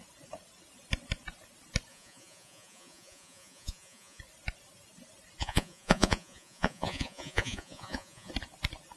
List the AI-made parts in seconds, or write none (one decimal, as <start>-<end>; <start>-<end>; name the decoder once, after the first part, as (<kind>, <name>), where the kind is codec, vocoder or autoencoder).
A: 1.9-4.2 (vocoder, Vocos); 5.4-8.3